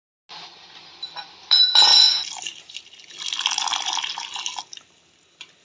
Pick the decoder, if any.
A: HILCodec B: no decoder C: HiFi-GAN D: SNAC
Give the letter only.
B